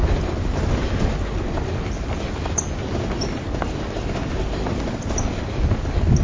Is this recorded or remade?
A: recorded